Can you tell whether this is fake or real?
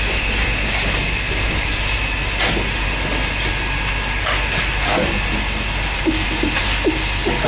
real